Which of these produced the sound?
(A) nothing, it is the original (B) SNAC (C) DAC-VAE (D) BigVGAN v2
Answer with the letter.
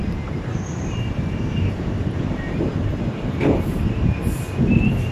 D